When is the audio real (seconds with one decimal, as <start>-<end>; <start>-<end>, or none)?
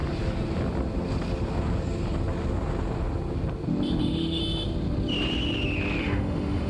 0.0-4.0; 4.4-6.0